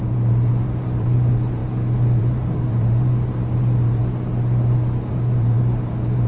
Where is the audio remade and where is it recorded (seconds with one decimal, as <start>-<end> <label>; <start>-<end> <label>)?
0.0-1.6 remade; 1.6-2.2 recorded; 2.2-4.0 remade; 4.0-5.1 recorded; 5.1-6.3 remade